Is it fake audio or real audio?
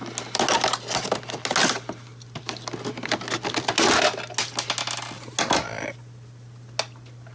real